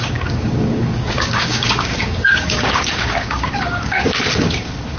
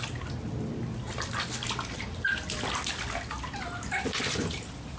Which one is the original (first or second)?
second